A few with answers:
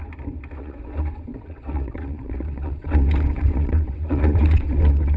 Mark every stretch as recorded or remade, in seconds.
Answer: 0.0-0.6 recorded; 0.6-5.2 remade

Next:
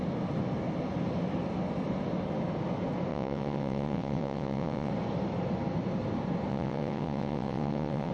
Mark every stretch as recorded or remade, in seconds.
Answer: 0.0-3.1 recorded; 3.1-4.9 remade; 4.9-6.5 recorded; 6.5-8.1 remade

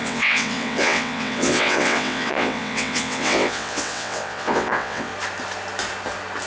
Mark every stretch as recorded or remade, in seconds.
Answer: 0.0-5.1 remade; 5.1-6.5 recorded

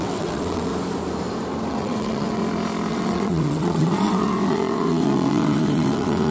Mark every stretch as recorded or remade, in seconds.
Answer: 0.0-0.7 remade; 0.7-1.7 recorded; 1.7-2.4 remade; 2.4-2.9 recorded; 2.9-6.3 remade

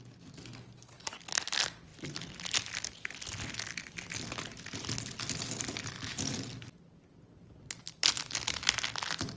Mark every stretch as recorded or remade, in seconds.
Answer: 0.0-9.4 recorded

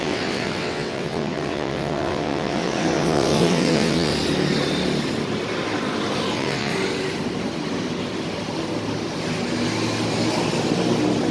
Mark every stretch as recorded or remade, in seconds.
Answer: 0.0-4.1 remade; 4.1-6.3 recorded; 6.3-6.7 remade; 6.7-11.3 recorded

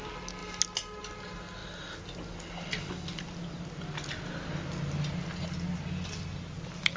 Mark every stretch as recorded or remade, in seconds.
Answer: 0.0-7.0 recorded

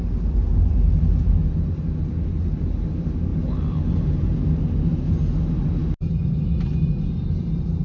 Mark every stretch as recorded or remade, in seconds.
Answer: 0.0-7.8 recorded